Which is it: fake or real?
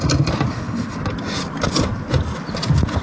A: real